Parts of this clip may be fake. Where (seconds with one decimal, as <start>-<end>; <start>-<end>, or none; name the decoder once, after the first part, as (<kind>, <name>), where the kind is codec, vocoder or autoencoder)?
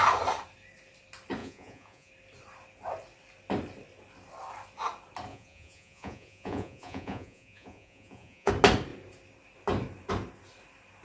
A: 1.4-2.1 (vocoder, Vocos); 5.3-8.5